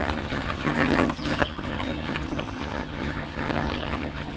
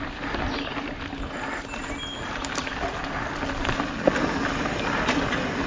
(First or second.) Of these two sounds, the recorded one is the second